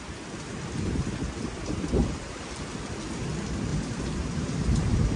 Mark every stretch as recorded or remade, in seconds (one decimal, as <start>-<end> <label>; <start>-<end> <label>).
0.0-3.7 recorded; 3.7-5.2 remade